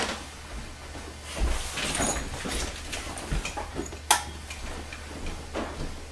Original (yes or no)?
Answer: yes